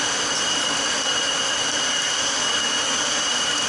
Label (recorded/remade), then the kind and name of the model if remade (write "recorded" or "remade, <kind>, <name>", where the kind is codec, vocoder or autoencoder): recorded